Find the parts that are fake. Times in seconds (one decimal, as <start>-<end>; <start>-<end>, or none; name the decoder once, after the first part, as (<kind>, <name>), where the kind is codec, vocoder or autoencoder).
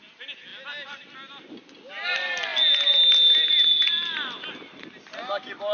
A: none